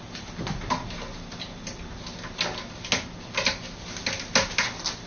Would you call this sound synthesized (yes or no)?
no